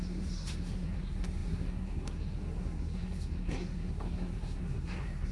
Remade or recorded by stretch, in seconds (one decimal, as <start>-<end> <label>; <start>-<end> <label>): 0.0-5.3 remade